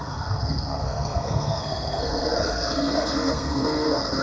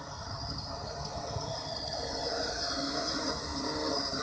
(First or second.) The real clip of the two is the second